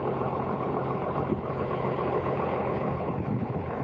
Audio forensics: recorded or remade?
remade